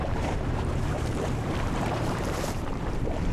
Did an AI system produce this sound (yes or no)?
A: yes